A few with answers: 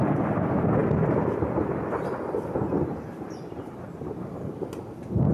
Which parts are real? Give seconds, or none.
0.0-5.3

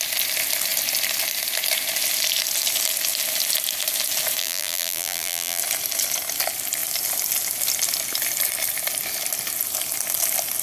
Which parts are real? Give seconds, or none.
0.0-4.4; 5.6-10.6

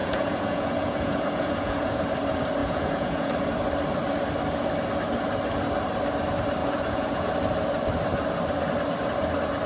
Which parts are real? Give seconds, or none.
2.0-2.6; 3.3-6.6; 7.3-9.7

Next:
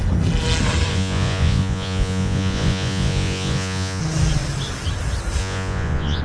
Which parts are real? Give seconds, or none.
0.0-0.9; 4.0-5.4

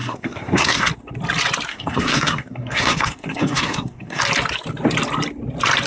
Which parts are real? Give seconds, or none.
0.9-1.7; 4.2-5.9